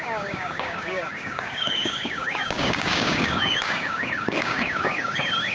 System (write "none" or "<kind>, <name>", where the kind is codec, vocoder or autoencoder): codec, DAC